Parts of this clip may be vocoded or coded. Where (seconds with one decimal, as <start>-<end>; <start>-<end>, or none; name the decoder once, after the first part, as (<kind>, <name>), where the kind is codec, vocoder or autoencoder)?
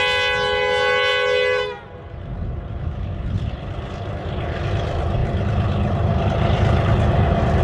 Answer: 5.2-7.6 (vocoder, BigVGAN v2)